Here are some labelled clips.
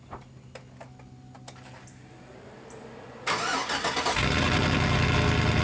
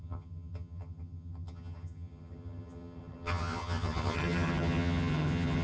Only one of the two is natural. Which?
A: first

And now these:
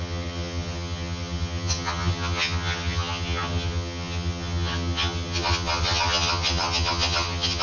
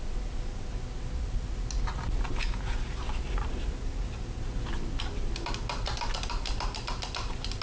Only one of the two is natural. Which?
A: second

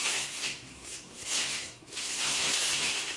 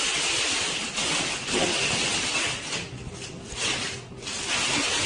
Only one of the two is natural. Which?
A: second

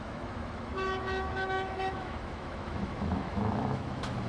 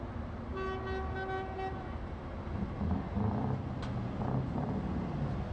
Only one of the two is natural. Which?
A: second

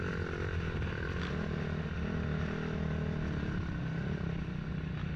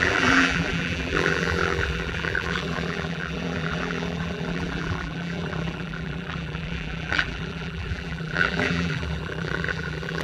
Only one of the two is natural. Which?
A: first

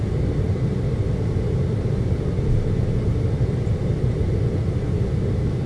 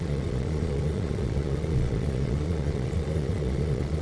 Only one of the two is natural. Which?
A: first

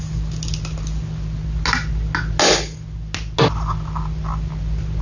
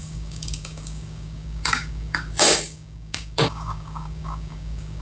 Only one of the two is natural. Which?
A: first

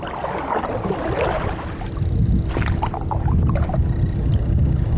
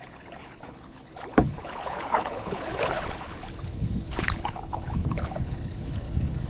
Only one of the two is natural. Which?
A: first